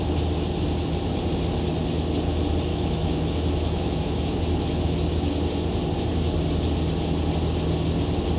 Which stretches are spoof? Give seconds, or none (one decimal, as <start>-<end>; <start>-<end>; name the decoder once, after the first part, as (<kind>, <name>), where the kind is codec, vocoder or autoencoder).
2.7-4.4 (autoencoder, DAC-VAE)

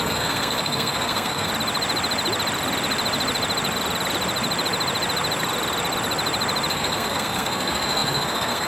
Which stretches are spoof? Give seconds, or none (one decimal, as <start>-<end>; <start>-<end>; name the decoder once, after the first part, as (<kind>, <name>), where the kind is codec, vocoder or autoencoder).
0.0-1.5 (codec, SNAC); 6.7-8.7